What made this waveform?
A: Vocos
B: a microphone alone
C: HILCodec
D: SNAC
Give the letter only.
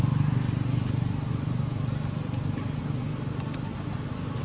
B